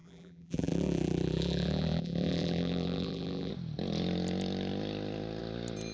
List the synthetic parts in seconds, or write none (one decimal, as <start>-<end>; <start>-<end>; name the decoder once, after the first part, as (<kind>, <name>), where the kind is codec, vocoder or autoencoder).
0.0-3.5 (vocoder, BigVGAN v2)